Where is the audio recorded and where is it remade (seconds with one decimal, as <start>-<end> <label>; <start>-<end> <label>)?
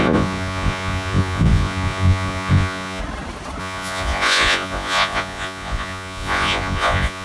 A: 0.0-3.0 remade; 3.0-3.6 recorded; 3.6-7.2 remade